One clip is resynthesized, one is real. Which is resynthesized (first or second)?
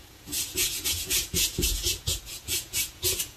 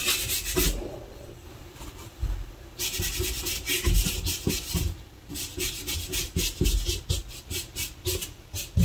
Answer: first